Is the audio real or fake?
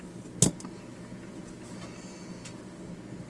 real